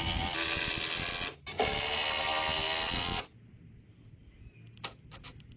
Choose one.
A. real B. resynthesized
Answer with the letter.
A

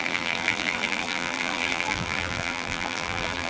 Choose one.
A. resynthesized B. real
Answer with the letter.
A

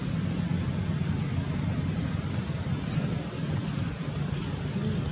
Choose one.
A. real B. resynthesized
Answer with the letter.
A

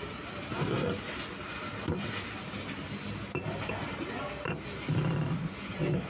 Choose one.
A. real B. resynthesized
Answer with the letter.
A